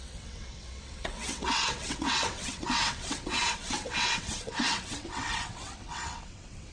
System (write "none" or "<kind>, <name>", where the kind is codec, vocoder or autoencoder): vocoder, WaveNeXt